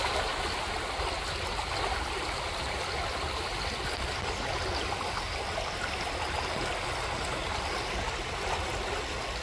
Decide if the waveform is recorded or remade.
recorded